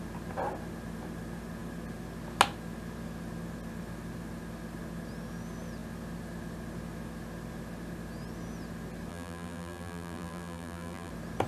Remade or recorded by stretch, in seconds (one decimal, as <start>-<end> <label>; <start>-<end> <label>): 0.0-9.1 recorded; 9.1-11.1 remade; 11.1-11.5 recorded